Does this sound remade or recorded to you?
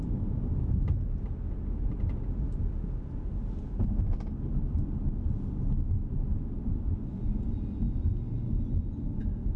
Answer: recorded